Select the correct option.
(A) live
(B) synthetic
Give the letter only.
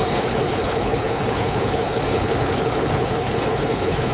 B